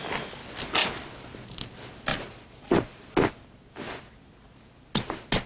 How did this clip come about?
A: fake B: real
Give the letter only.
B